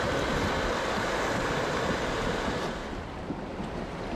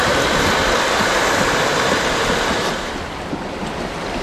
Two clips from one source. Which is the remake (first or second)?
second